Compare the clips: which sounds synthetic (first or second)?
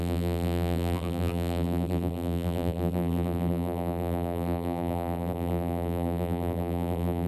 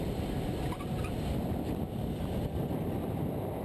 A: first